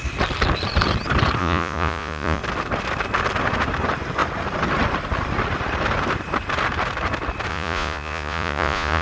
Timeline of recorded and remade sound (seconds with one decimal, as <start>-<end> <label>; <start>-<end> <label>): 0.0-1.4 recorded; 1.4-2.4 remade; 2.4-7.5 recorded; 7.5-9.0 remade